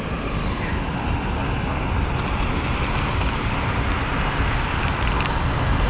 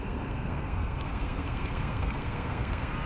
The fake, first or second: second